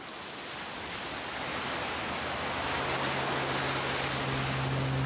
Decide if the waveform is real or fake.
real